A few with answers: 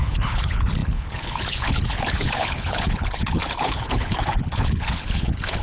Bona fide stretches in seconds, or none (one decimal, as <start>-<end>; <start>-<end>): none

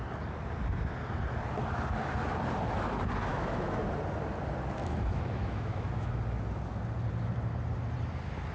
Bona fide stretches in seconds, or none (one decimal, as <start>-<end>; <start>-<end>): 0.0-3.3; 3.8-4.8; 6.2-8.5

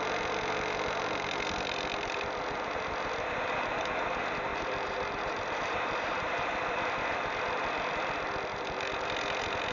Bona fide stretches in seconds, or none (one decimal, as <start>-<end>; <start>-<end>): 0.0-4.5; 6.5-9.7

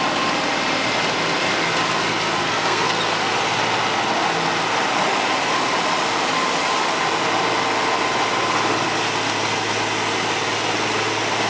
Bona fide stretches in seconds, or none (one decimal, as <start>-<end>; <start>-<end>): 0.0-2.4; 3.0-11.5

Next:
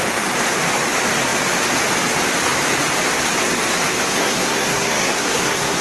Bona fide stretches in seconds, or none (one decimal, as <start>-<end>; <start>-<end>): 0.0-4.1

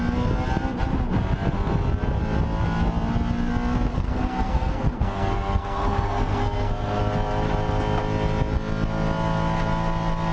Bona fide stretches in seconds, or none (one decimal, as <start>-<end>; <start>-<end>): 0.0-3.9; 7.0-10.3